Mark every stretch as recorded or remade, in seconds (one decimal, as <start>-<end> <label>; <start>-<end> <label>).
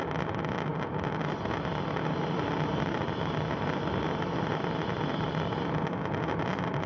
0.0-6.9 recorded